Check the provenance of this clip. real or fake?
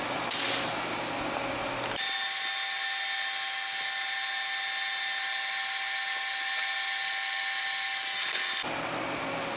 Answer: real